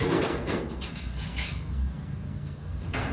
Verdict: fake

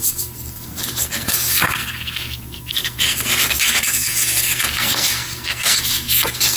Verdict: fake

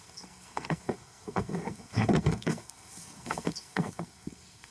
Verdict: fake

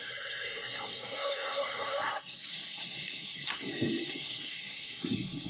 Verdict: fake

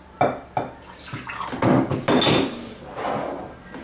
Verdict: real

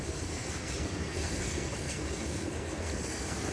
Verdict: fake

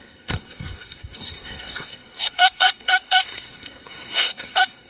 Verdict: fake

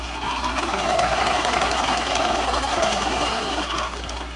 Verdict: fake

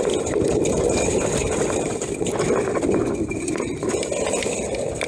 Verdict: real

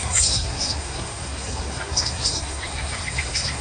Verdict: fake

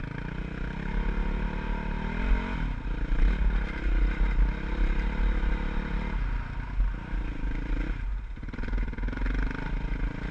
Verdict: real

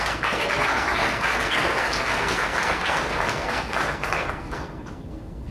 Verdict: fake